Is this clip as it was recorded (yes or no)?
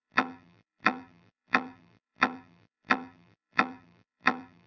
no